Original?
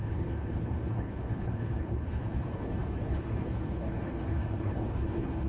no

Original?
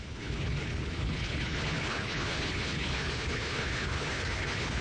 no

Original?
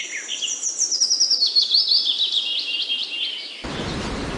yes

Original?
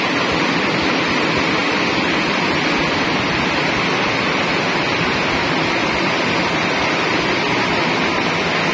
yes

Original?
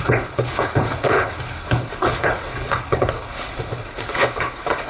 no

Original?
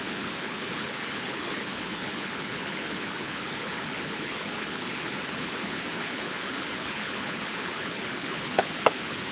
no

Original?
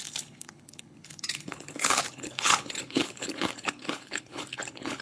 no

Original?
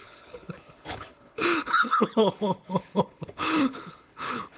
no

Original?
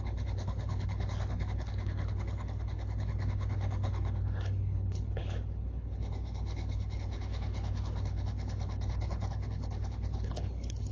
no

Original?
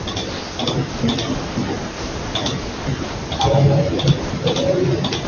yes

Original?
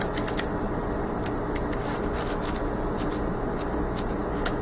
yes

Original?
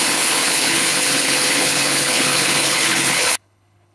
no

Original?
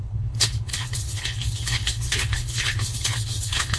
no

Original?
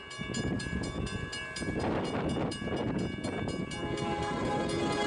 yes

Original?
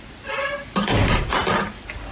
yes